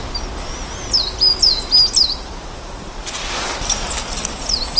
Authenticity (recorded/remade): recorded